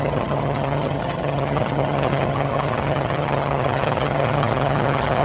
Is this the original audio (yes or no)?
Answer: no